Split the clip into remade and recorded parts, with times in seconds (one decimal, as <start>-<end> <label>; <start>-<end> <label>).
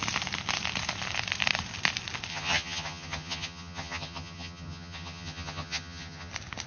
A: 0.0-2.3 recorded; 2.3-6.3 remade; 6.3-6.7 recorded